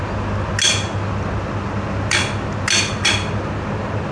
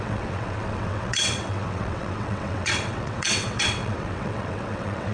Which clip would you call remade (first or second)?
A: second